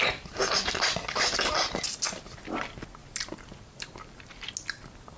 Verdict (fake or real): real